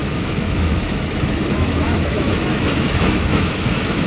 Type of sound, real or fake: fake